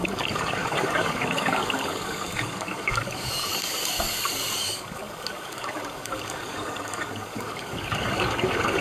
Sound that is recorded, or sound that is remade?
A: remade